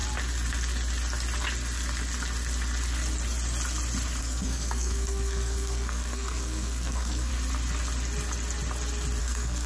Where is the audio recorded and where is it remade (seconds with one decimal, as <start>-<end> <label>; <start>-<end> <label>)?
0.0-4.2 recorded; 4.2-7.3 remade; 7.3-9.2 recorded; 9.2-9.7 remade